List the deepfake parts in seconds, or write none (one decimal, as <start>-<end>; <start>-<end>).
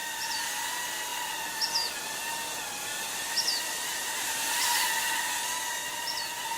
none